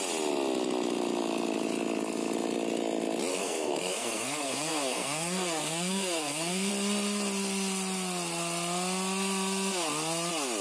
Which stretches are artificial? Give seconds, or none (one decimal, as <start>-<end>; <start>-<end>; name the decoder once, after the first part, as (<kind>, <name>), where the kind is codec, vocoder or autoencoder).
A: 3.3-6.7 (codec, SNAC)